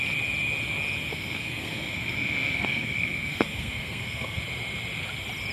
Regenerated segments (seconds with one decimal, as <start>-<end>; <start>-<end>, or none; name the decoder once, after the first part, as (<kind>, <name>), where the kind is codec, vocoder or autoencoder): 1.1-4.4 (codec, SNAC)